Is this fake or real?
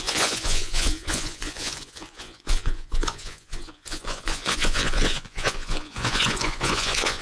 fake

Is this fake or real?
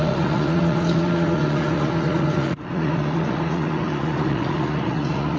fake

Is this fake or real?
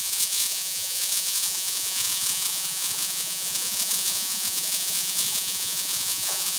fake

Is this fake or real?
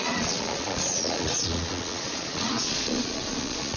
fake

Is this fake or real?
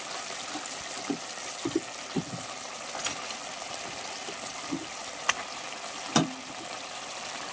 real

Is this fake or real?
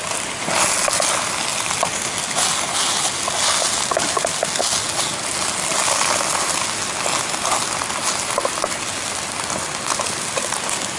real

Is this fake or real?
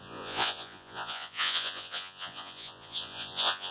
fake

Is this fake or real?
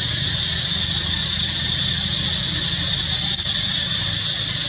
real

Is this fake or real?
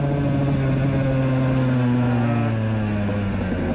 real